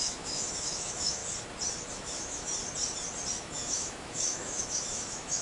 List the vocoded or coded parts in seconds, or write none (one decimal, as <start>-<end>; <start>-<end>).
0.0-1.2; 1.9-2.5; 3.4-5.4